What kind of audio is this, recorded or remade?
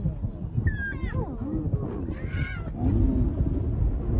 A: recorded